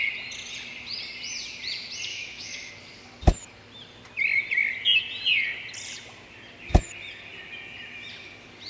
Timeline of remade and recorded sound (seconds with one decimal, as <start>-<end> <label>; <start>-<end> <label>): 0.0-2.1 recorded; 2.1-2.7 remade; 2.7-8.7 recorded